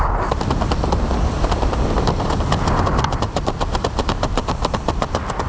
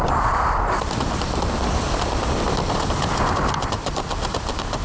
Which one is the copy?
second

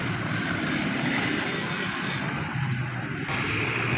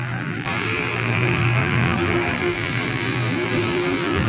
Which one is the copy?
second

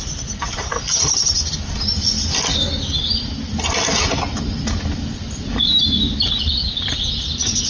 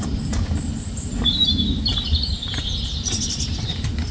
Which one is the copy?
second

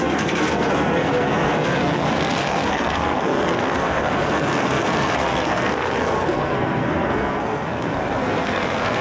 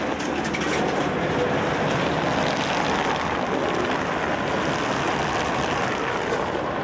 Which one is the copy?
first